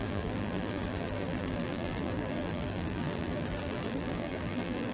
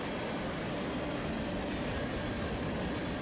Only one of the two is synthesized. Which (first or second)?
first